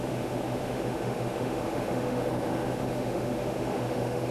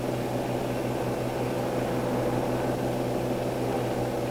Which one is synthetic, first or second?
first